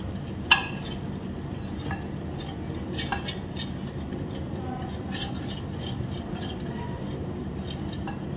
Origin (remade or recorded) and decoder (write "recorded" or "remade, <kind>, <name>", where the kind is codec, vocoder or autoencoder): recorded